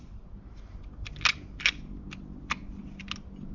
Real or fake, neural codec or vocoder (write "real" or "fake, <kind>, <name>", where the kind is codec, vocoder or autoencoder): real